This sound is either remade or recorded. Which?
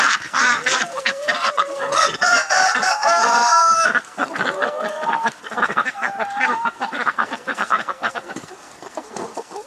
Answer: remade